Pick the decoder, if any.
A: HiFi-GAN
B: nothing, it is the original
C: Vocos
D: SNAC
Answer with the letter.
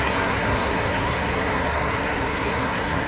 D